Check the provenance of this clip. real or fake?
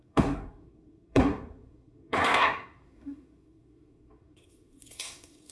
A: fake